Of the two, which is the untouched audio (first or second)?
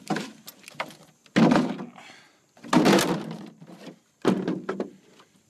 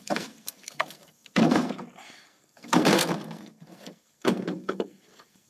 first